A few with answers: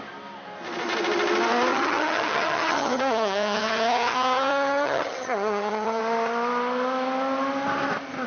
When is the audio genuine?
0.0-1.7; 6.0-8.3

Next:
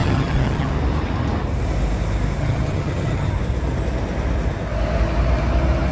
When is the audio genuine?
0.7-2.4; 3.3-5.9

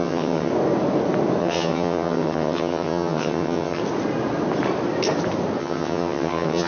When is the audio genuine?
0.5-1.4; 3.8-5.6

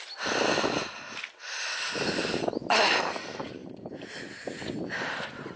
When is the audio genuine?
0.0-5.6